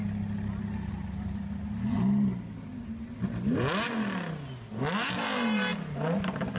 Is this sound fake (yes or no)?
no